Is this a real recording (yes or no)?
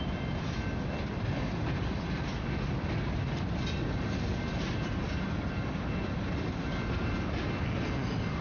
yes